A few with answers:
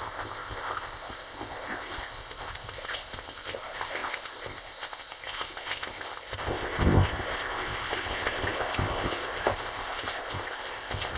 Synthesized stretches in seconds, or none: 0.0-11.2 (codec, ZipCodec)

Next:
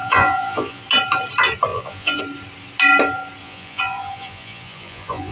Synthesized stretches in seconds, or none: 0.0-0.8 (vocoder, Vocos); 1.7-2.2; 3.4-5.3

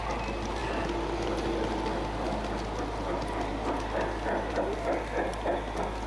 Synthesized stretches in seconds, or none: none

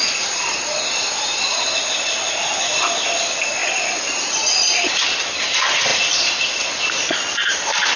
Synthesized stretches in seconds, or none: none

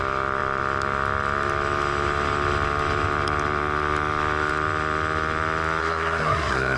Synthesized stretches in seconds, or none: 5.8-6.8 (codec, SNAC)

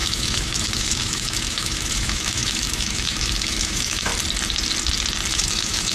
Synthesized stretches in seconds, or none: 0.0-4.1 (autoencoder, DAC-VAE); 5.3-5.9

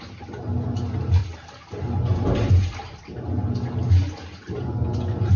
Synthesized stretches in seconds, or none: none

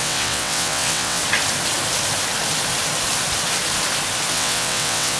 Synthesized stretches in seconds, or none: 0.0-1.2 (vocoder, WaveNeXt); 4.3-5.2